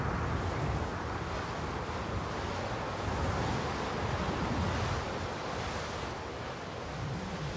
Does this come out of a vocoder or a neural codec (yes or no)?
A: no